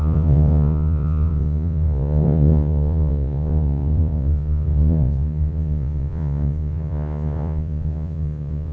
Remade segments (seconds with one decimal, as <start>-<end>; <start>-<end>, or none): 0.0-8.7